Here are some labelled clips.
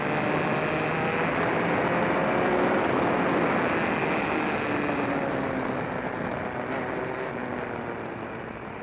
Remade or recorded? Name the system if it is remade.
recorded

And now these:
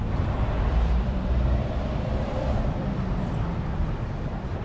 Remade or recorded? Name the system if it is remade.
remade, vocoder, BigVGAN v2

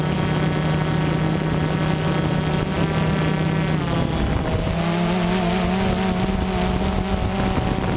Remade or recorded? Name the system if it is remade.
recorded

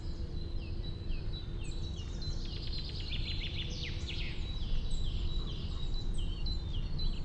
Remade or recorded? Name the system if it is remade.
remade, vocoder, BigVGAN v2